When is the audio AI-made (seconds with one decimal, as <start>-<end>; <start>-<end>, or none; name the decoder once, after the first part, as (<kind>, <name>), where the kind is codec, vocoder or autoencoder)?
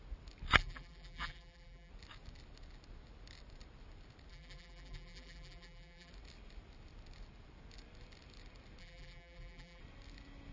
0.6-1.9 (vocoder, BigVGAN v2); 4.3-6.1; 8.8-9.8